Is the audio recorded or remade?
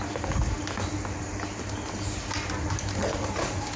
recorded